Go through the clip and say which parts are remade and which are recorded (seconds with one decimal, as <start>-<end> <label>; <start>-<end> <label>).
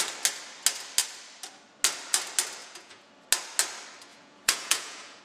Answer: 0.0-2.6 recorded; 2.6-3.1 remade; 3.1-4.1 recorded; 4.1-5.2 remade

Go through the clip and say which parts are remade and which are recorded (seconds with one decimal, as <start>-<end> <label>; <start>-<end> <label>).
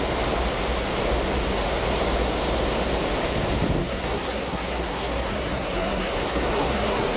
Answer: 0.0-3.8 recorded; 3.8-7.2 remade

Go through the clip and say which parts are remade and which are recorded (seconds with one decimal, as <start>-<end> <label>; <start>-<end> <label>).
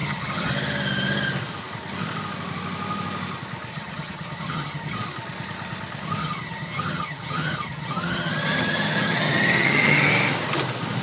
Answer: 0.0-0.5 remade; 0.5-3.7 recorded; 3.7-5.0 remade; 5.0-6.2 recorded; 6.2-10.1 remade; 10.1-11.0 recorded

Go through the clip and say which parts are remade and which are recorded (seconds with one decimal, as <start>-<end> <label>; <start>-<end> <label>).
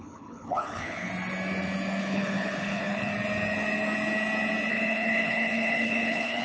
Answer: 0.0-1.1 remade; 1.1-2.0 recorded; 2.0-3.1 remade; 3.1-4.7 recorded; 4.7-6.4 remade